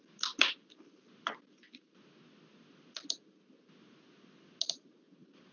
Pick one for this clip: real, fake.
real